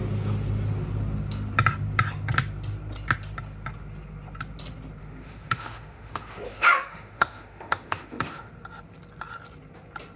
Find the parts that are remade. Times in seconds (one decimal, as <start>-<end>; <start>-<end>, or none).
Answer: 5.0-8.5